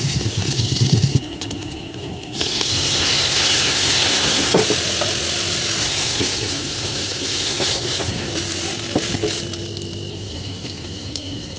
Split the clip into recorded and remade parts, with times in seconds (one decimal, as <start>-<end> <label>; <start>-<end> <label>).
0.0-4.6 remade; 4.6-5.8 recorded; 5.8-8.3 remade; 8.3-10.1 recorded; 10.1-11.6 remade